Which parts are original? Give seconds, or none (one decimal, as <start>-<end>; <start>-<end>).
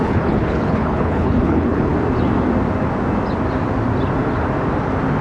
1.9-5.2